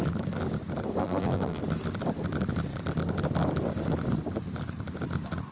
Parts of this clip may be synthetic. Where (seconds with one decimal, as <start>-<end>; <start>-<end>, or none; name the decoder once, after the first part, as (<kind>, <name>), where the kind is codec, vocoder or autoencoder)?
1.0-1.6 (vocoder, BigVGAN v2)